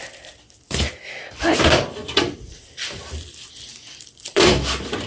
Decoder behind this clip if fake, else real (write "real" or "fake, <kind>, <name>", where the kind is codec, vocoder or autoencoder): fake, vocoder, BigVGAN v2